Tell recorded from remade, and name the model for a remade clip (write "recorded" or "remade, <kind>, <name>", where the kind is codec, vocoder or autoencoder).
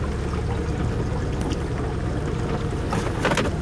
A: recorded